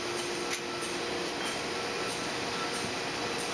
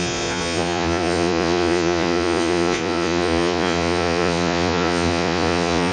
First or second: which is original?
first